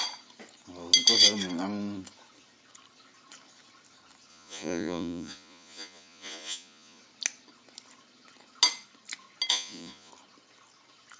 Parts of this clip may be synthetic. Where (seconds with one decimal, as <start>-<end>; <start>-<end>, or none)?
4.3-7.0; 9.5-10.1